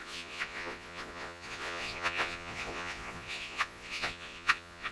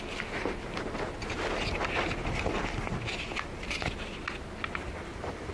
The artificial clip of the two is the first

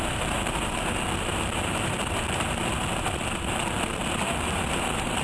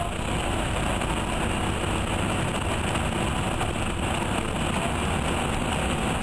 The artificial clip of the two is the first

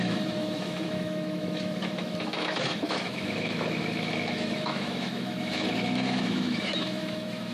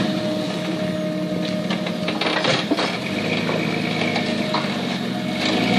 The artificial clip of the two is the first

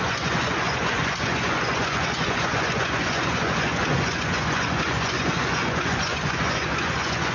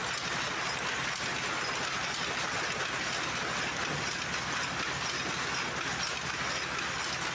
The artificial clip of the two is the first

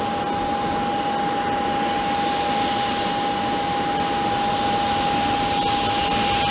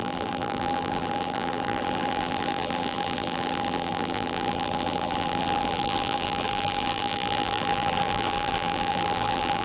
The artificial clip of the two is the second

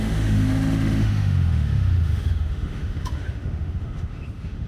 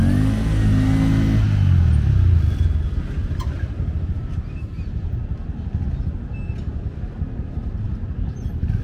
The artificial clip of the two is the first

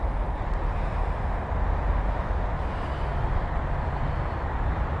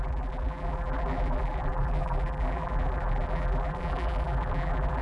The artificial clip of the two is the second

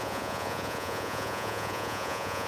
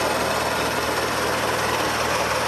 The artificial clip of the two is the first